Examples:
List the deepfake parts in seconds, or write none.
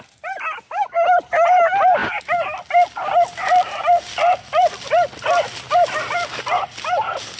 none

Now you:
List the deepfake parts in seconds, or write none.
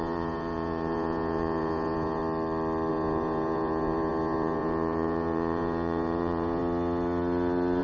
0.0-2.2 (vocoder, Vocos); 2.9-6.6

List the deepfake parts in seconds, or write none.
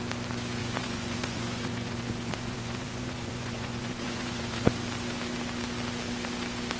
0.6-4.7 (vocoder, Vocos)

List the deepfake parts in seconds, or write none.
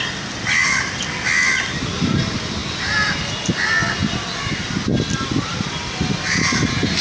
none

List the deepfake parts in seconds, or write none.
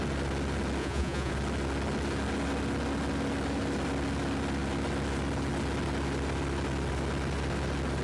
0.8-1.3 (vocoder, Vocos)